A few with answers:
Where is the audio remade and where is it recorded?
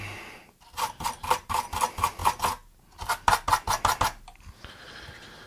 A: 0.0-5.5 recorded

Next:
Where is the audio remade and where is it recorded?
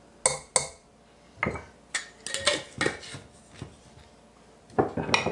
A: 0.0-5.3 recorded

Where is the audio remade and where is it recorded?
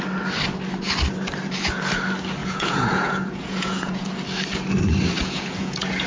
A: 0.0-2.4 recorded; 2.4-4.1 remade; 4.1-5.2 recorded; 5.2-6.1 remade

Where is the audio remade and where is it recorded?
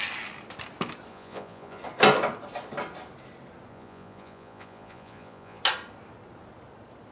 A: 0.0-1.1 recorded; 1.1-1.8 remade; 1.8-3.7 recorded; 3.7-5.6 remade; 5.6-7.1 recorded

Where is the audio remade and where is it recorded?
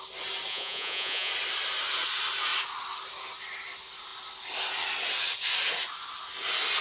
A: 0.0-0.5 recorded; 0.5-1.3 remade; 1.3-6.8 recorded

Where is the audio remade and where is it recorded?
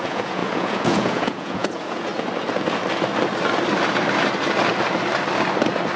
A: 0.0-2.1 remade; 2.1-6.0 recorded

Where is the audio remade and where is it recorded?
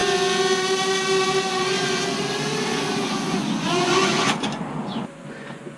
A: 0.0-1.5 recorded; 1.5-2.0 remade; 2.0-2.9 recorded; 2.9-5.8 remade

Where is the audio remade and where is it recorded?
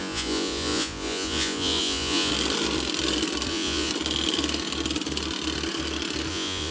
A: 0.0-2.3 remade; 2.3-3.5 recorded; 3.5-3.9 remade; 3.9-6.3 recorded; 6.3-6.7 remade